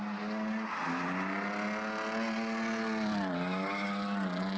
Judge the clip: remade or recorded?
recorded